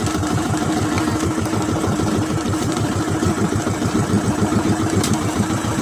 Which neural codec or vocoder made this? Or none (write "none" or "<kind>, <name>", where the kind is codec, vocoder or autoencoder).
vocoder, BigVGAN v2